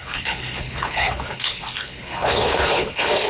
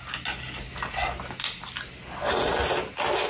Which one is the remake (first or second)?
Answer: first